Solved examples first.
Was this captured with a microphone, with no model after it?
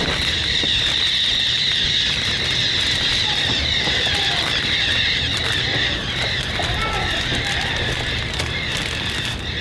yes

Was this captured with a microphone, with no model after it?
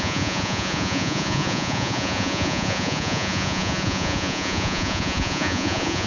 no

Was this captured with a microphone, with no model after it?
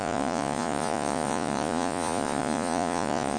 no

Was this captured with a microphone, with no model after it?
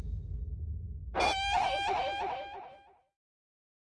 yes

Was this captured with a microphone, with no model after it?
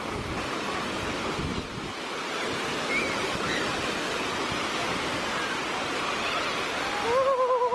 yes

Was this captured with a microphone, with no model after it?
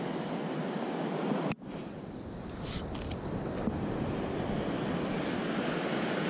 yes